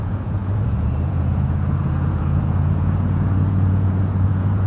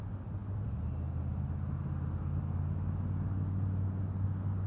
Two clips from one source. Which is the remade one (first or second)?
first